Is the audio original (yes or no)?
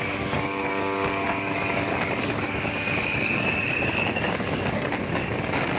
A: no